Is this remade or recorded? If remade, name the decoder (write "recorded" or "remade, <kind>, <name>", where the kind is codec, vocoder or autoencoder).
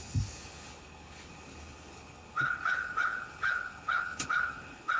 remade, codec, HILCodec